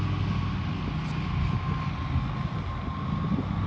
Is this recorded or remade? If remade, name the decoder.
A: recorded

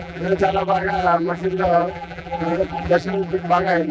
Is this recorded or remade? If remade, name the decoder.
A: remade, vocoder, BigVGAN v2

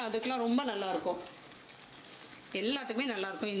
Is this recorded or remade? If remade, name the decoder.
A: remade, codec, DAC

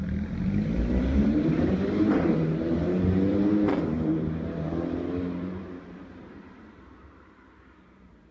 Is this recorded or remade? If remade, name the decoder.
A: remade, vocoder, BigVGAN v2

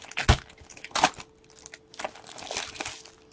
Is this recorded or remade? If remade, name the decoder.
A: recorded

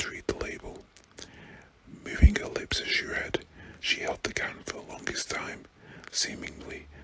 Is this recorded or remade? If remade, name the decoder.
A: recorded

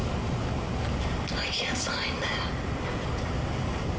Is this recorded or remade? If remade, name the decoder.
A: recorded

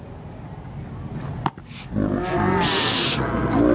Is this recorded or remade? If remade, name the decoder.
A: recorded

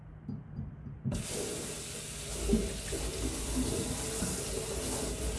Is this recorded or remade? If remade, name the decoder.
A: recorded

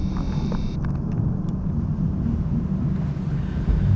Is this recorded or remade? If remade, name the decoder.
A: recorded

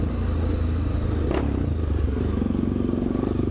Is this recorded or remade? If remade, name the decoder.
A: recorded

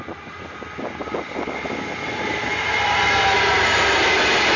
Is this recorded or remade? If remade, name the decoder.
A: recorded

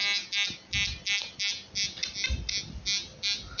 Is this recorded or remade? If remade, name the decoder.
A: recorded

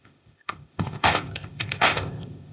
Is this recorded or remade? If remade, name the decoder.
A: remade, codec, ZipCodec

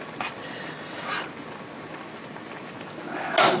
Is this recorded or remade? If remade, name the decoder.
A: recorded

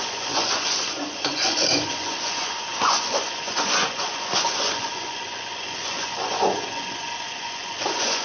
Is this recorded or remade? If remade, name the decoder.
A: remade, vocoder, Vocos